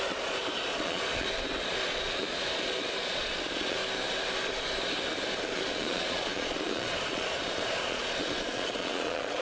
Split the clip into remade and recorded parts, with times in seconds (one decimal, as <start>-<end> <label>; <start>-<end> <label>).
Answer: 0.0-3.8 remade; 3.8-5.5 recorded; 5.5-9.4 remade